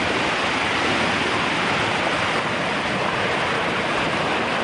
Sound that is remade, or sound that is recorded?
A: recorded